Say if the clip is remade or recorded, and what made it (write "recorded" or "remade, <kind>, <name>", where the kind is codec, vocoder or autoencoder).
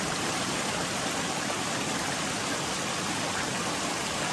recorded